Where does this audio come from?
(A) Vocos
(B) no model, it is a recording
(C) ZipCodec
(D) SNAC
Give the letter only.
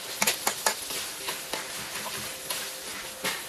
B